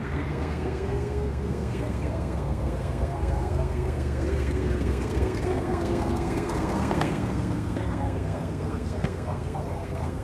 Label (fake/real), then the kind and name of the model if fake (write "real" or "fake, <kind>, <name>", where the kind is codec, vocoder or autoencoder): fake, codec, SNAC